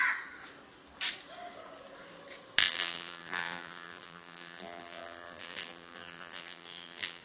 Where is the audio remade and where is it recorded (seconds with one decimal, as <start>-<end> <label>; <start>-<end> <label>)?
0.0-2.6 recorded; 2.6-7.2 remade